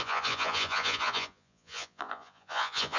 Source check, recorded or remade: remade